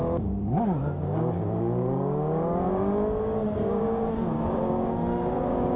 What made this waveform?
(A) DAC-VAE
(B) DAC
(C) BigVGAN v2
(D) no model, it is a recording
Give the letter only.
B